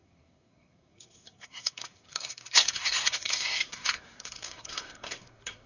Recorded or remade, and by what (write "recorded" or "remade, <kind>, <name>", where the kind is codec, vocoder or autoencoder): remade, codec, SNAC